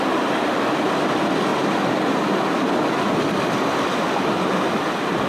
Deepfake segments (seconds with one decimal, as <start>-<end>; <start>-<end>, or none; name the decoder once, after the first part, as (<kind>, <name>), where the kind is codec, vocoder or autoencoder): none